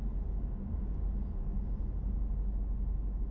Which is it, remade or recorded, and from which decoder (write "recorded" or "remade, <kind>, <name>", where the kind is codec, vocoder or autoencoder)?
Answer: recorded